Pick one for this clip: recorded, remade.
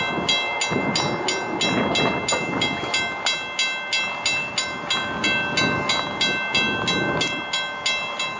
recorded